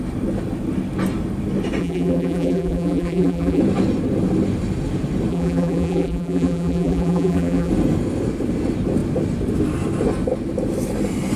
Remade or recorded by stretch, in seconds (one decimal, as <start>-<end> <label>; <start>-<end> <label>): 0.0-1.8 recorded; 1.8-3.6 remade; 3.6-5.3 recorded; 5.3-7.7 remade; 7.7-11.4 recorded